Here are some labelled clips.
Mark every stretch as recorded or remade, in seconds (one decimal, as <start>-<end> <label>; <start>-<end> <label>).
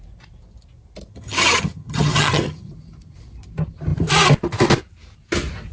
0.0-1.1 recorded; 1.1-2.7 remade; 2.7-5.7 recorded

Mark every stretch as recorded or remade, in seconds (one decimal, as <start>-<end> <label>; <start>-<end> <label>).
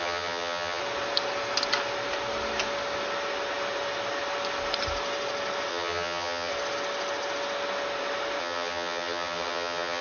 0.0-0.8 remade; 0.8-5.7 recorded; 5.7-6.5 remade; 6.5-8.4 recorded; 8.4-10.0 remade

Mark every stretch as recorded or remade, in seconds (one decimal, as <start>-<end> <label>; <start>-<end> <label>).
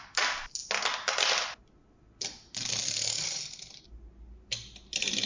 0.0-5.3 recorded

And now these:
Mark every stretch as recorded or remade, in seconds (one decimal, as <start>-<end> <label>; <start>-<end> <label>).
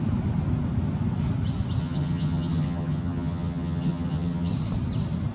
0.0-1.8 recorded; 1.8-4.5 remade; 4.5-5.3 recorded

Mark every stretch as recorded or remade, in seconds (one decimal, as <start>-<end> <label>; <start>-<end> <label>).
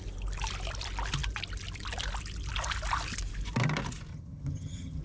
0.0-4.1 recorded; 4.1-5.0 remade